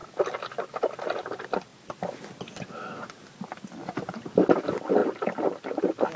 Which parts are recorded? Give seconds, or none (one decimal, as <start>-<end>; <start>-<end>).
0.0-6.2